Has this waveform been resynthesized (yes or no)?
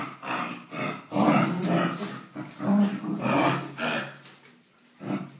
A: no